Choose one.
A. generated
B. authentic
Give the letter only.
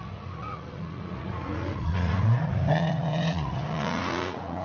A